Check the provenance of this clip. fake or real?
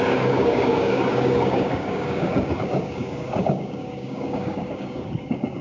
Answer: fake